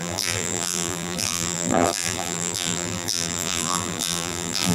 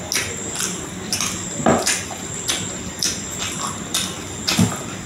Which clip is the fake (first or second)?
first